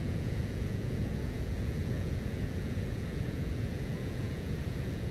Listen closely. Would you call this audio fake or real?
fake